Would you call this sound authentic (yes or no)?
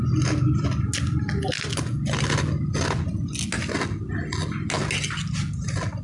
yes